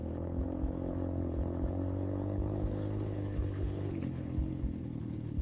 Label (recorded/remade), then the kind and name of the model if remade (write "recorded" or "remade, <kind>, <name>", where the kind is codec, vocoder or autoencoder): remade, codec, HILCodec